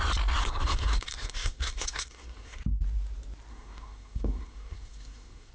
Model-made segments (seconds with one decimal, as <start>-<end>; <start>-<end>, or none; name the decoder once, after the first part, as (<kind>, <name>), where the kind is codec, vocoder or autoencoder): 0.4-2.6 (codec, SNAC); 3.5-5.5